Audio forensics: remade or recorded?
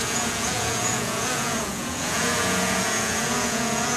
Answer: remade